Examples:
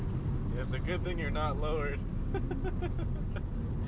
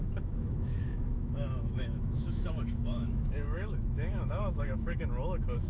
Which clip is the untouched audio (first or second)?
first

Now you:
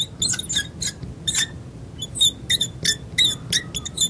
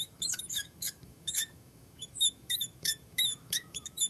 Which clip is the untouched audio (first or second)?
first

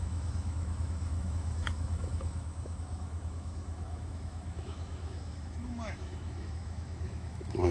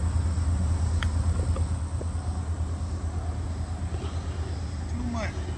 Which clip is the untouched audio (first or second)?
second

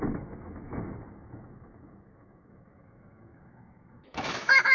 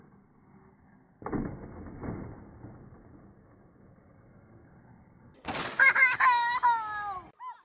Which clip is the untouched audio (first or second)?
second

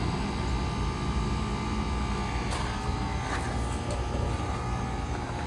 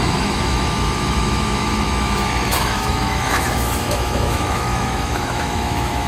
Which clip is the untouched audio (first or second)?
first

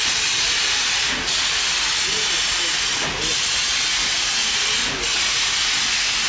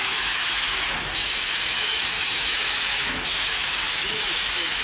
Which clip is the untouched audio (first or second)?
first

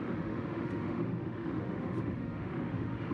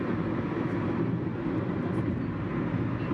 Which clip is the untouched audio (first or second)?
second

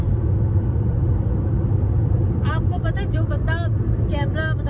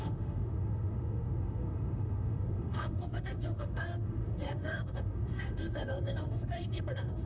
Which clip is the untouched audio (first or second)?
first